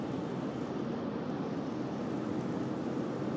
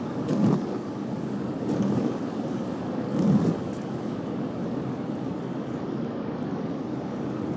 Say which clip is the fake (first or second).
second